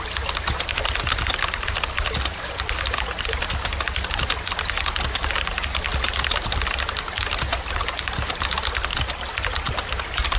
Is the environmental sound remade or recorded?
recorded